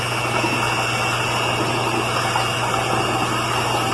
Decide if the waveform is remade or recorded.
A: recorded